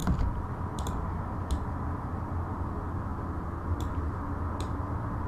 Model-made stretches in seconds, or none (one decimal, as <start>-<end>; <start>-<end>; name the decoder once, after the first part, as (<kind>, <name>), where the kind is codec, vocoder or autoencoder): none